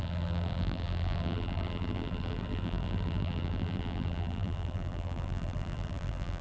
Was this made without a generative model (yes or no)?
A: no